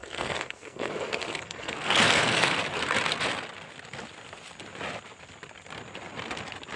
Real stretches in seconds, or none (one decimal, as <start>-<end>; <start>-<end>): 2.5-6.8